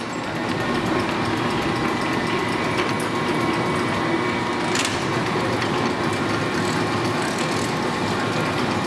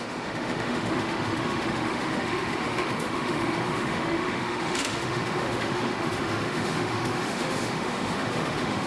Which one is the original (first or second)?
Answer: first